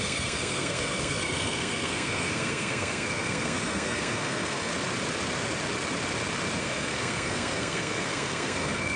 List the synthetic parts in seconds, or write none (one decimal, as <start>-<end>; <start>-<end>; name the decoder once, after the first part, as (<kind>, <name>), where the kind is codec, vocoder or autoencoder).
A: 0.0-4.7 (codec, SNAC); 6.6-9.0